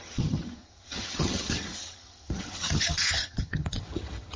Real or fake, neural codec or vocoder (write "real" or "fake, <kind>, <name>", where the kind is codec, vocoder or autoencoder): fake, vocoder, HiFi-GAN